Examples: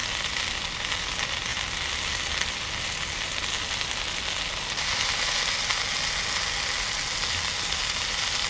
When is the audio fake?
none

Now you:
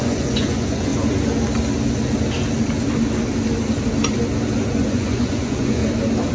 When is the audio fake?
0.0-0.9 (vocoder, Vocos); 4.7-5.8

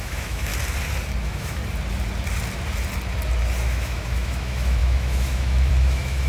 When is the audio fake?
0.0-0.5 (autoencoder, DAC-VAE); 1.2-1.6; 3.6-6.3

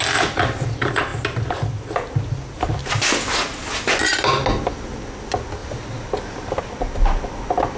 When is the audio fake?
none

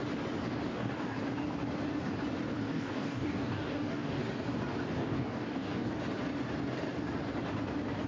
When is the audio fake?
0.7-1.2 (codec, DAC); 2.7-4.2; 5.0-5.9

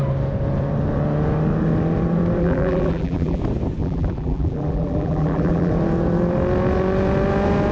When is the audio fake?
2.4-3.4 (vocoder, BigVGAN v2); 3.8-5.7

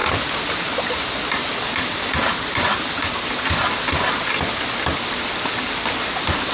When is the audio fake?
none